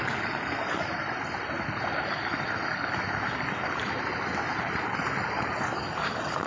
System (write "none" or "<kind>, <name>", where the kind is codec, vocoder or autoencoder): none